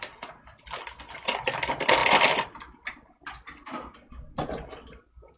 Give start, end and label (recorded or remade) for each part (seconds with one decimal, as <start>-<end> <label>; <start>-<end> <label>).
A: 0.0-5.4 recorded

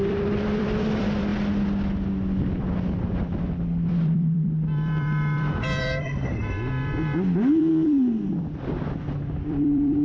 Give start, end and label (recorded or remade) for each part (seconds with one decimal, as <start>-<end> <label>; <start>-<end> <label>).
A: 0.0-1.3 remade; 1.3-2.6 recorded; 2.6-6.4 remade; 6.4-7.5 recorded; 7.5-10.0 remade

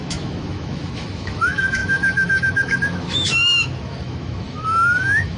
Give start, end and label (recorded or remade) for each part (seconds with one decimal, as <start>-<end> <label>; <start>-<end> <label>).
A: 0.0-5.4 remade

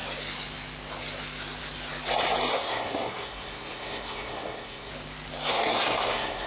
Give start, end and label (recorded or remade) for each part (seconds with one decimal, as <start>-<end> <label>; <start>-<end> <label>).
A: 0.0-2.5 recorded; 2.5-4.9 remade; 4.9-5.5 recorded; 5.5-6.5 remade

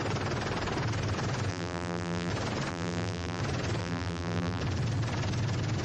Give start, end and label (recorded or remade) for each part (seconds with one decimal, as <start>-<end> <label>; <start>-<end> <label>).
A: 0.0-1.5 recorded; 1.5-2.3 remade; 2.3-2.7 recorded; 2.7-3.4 remade; 3.4-3.8 recorded; 3.8-4.6 remade; 4.6-5.8 recorded

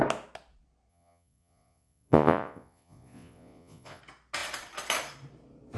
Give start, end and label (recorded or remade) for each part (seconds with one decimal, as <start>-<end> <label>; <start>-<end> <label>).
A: 0.0-0.9 recorded; 0.9-4.0 remade; 4.0-5.8 recorded

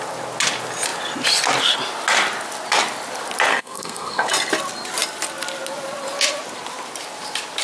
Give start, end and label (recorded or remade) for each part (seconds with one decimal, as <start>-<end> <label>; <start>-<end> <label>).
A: 0.0-3.5 recorded; 3.5-4.3 remade; 4.3-7.6 recorded

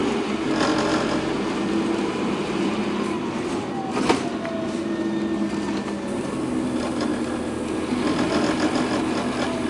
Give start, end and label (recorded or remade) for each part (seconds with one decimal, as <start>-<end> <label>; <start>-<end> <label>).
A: 0.0-9.7 recorded